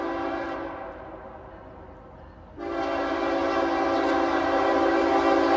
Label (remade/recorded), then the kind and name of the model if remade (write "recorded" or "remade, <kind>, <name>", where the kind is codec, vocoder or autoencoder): recorded